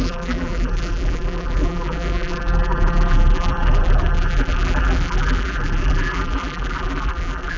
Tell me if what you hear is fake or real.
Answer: fake